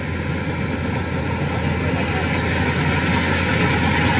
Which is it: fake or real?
real